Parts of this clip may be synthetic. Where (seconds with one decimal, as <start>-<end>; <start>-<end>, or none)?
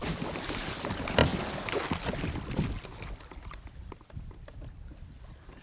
none